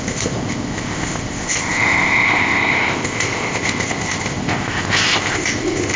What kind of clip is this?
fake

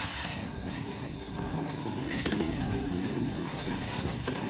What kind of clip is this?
fake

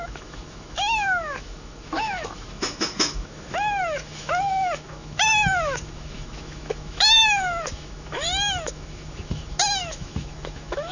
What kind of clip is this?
fake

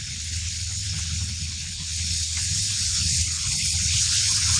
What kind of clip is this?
fake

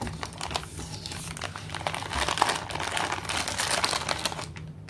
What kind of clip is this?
real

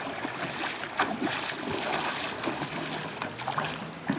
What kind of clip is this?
real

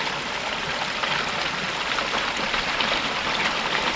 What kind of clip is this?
real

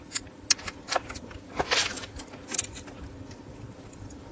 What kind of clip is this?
real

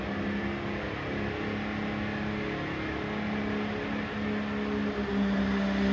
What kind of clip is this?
real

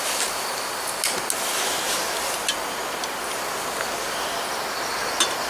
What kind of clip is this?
real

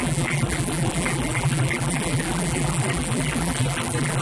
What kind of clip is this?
fake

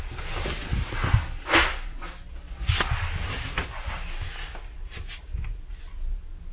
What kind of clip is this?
real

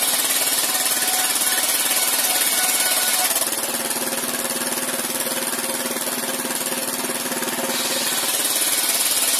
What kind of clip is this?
real